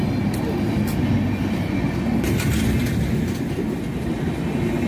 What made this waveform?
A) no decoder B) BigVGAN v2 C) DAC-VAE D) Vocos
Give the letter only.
A